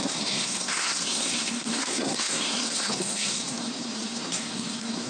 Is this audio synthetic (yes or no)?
yes